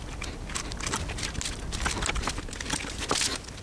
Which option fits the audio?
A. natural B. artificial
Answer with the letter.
A